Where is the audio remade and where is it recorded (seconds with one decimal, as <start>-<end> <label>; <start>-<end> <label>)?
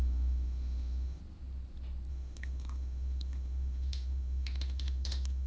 0.0-1.2 remade; 1.2-2.1 recorded; 2.1-5.5 remade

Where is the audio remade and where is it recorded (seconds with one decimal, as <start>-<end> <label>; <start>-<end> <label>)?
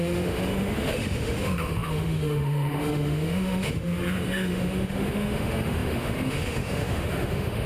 0.0-7.7 remade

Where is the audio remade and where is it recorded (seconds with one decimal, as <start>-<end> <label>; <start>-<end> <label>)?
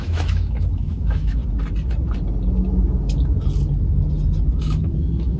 0.0-1.4 remade; 1.4-4.5 recorded; 4.5-5.4 remade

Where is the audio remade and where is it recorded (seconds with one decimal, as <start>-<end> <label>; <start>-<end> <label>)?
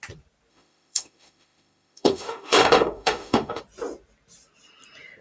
0.0-0.5 recorded; 0.5-3.6 remade; 3.6-5.2 recorded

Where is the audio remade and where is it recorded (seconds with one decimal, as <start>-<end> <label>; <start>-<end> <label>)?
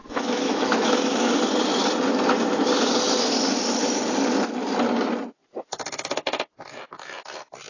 0.0-1.3 remade; 1.3-7.7 recorded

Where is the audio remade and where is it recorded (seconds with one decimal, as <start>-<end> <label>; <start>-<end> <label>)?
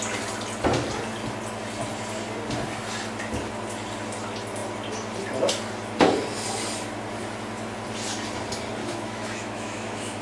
0.0-8.8 recorded; 8.8-10.2 remade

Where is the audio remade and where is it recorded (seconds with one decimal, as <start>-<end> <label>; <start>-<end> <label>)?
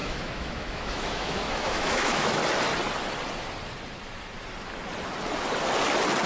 0.0-2.4 remade; 2.4-6.3 recorded